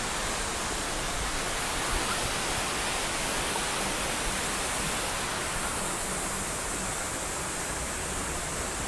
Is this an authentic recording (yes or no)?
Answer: yes